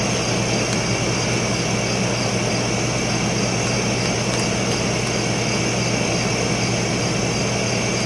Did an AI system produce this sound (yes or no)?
no